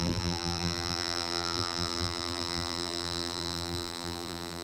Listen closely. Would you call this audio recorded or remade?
remade